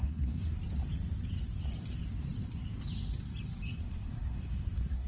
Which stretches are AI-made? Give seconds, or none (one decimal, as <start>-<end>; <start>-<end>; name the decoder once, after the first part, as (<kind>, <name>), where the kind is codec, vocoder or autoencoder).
0.0-0.6 (codec, SNAC); 3.7-5.1